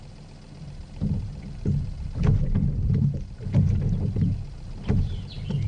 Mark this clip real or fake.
real